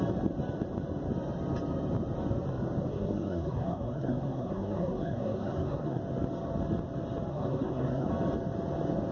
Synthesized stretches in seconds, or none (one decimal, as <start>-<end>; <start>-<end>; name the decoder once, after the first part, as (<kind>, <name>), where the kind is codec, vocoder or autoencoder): 2.9-6.0 (codec, SNAC); 7.3-8.1